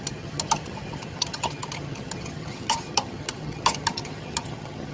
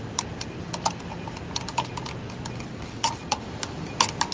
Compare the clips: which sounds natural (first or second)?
second